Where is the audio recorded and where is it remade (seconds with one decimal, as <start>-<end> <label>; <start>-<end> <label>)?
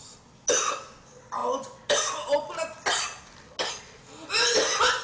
0.0-5.0 recorded